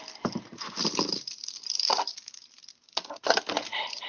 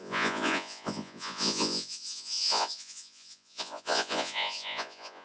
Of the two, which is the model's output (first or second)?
second